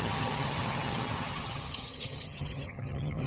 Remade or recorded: remade